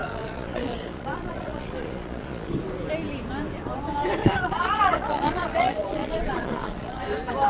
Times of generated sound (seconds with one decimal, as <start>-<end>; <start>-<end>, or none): 0.0-2.5; 4.2-7.0